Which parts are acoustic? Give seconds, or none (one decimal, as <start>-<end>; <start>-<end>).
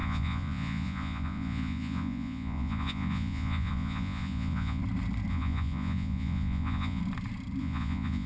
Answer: 4.8-5.3; 7.0-7.6